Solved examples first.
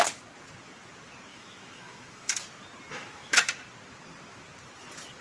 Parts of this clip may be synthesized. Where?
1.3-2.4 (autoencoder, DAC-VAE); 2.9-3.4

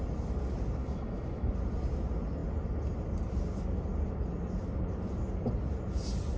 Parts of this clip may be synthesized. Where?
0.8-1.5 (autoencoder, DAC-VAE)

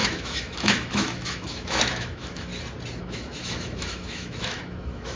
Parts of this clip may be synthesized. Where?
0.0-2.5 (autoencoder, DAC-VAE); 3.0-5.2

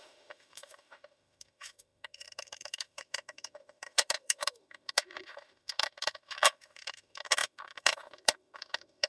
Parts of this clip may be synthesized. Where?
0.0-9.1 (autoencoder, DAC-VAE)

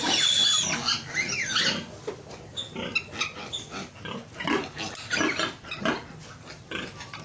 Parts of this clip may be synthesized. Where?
none

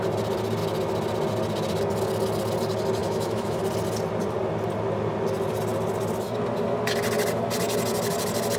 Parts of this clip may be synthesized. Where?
3.0-3.6 (autoencoder, DAC-VAE)